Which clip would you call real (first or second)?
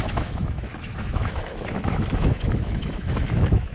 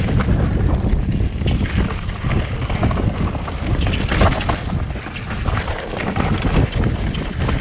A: second